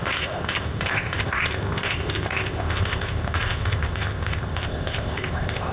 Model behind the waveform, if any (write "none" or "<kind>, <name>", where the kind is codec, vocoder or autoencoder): codec, ZipCodec